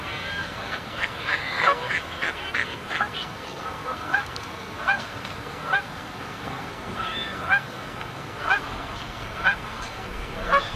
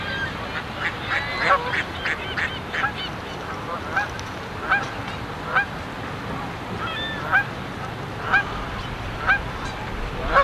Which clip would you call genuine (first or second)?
second